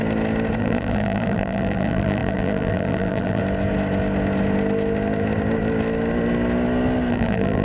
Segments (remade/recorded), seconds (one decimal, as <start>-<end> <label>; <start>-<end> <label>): 0.0-0.6 recorded; 0.6-3.4 remade; 3.4-7.1 recorded; 7.1-7.6 remade